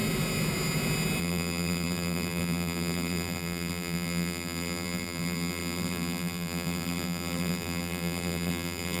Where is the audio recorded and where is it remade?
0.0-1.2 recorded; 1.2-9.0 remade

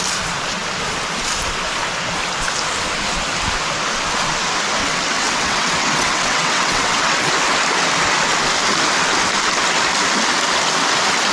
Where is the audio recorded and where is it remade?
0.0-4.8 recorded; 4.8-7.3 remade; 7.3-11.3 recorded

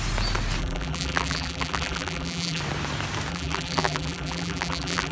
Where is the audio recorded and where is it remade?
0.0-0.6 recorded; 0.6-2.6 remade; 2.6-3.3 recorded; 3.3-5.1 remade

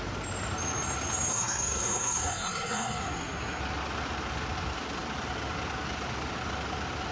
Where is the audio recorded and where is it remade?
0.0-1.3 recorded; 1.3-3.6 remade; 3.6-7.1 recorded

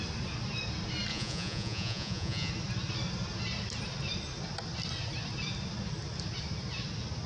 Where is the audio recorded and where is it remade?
0.0-1.1 recorded; 1.1-2.5 remade; 2.5-7.3 recorded